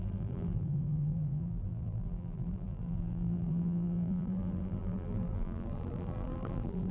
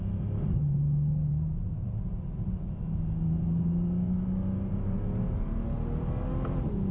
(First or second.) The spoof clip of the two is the first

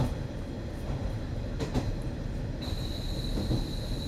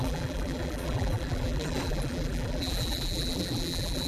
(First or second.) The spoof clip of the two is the second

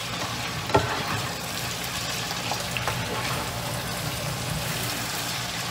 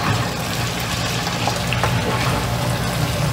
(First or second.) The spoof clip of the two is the first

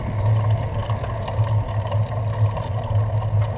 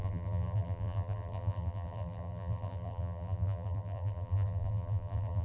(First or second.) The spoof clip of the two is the second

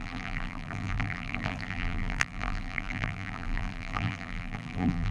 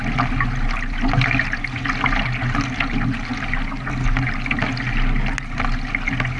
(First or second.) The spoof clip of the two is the first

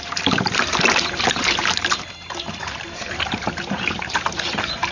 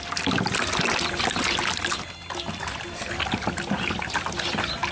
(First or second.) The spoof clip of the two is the first